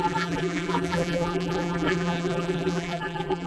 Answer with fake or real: fake